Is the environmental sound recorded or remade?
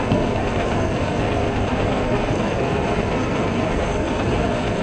remade